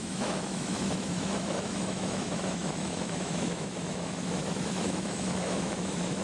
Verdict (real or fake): fake